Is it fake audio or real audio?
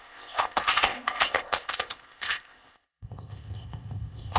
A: fake